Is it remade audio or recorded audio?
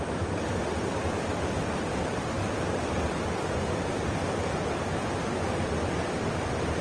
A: remade